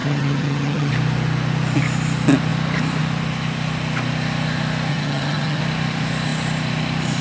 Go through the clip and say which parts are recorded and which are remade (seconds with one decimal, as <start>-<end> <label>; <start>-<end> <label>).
0.0-0.9 remade; 0.9-4.9 recorded; 4.9-5.6 remade; 5.6-7.2 recorded